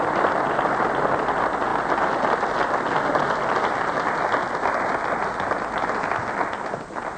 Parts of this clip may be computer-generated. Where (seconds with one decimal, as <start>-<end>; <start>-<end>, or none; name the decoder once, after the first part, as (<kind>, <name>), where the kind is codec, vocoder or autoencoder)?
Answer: none

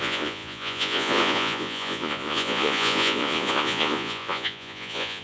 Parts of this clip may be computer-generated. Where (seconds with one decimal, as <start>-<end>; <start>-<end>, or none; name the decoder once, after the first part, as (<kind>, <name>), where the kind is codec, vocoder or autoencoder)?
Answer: 0.0-5.2 (vocoder, Vocos)

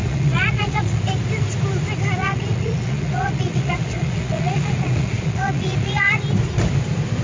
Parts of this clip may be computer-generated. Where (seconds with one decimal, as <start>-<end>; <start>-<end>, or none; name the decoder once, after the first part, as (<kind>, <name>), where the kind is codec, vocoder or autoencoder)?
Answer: 0.0-1.0 (vocoder, Vocos); 2.2-6.2